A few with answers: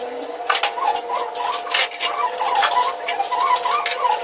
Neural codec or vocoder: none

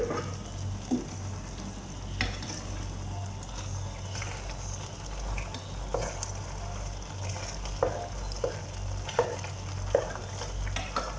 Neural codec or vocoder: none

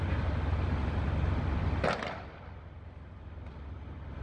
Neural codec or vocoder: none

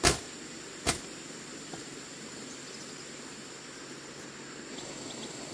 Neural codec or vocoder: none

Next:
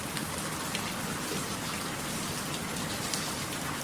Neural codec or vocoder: none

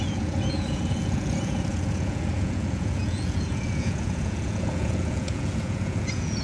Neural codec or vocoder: vocoder, Vocos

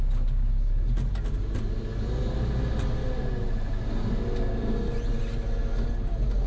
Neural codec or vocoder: none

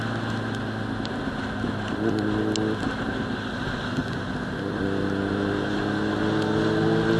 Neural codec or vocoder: none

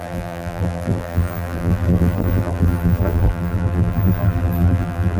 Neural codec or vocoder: vocoder, BigVGAN v2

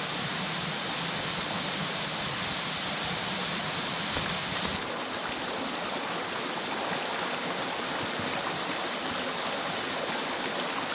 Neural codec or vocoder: none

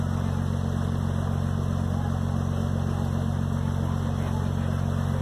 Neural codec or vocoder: none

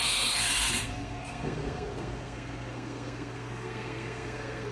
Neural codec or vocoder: codec, SNAC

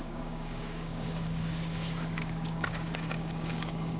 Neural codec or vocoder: codec, DAC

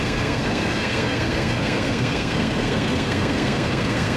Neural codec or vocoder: codec, SNAC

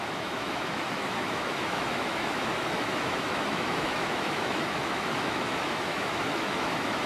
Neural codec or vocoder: autoencoder, DAC-VAE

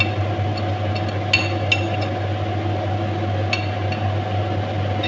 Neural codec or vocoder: none